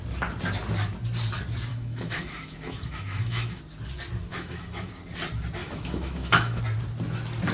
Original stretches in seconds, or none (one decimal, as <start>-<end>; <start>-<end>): 0.0-1.7; 3.6-4.3; 4.9-5.6; 6.6-7.5